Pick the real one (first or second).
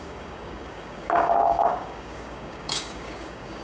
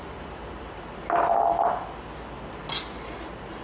second